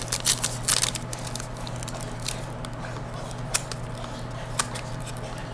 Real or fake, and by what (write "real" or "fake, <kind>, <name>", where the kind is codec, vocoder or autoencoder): real